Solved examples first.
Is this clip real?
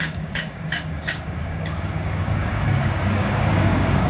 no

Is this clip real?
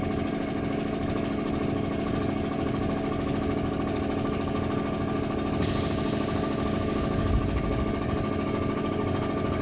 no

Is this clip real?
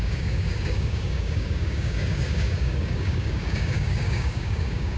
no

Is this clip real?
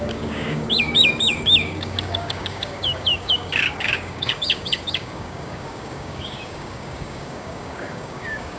no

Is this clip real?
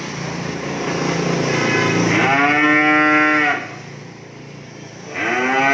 yes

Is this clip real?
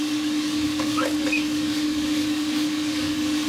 no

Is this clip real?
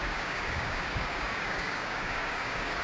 no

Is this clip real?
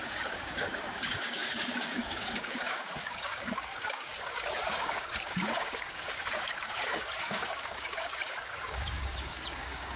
no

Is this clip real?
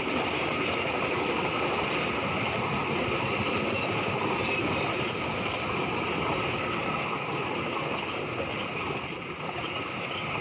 yes